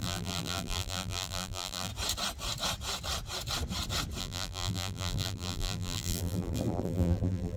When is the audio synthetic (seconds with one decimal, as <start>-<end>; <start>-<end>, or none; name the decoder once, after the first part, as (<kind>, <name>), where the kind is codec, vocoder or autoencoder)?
0.0-1.9 (vocoder, BigVGAN v2); 4.2-7.6